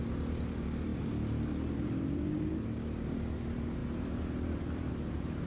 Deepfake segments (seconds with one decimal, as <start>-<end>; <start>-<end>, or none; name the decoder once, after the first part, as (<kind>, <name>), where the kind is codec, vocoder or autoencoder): 0.0-5.5 (vocoder, BigVGAN v2)